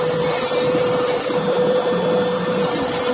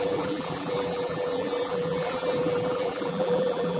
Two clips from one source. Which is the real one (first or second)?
first